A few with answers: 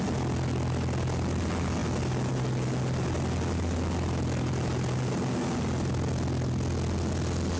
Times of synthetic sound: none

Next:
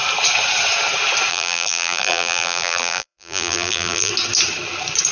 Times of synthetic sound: 1.3-4.1

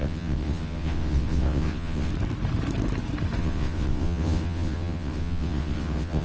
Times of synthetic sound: 0.0-2.1; 3.4-6.2

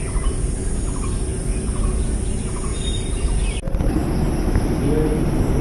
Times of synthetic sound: none

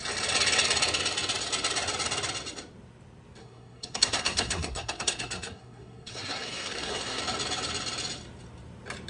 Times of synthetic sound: 3.4-7.2

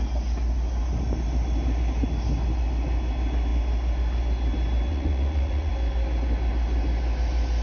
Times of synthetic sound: 4.9-5.7

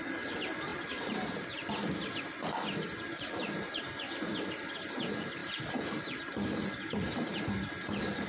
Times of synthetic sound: none